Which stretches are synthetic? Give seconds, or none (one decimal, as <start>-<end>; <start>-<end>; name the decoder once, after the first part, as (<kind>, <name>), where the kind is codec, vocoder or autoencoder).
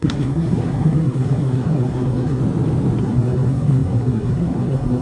0.0-2.4 (codec, SNAC); 3.0-5.0